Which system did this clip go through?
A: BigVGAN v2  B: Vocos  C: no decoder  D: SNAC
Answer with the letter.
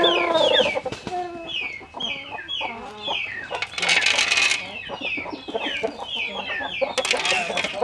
C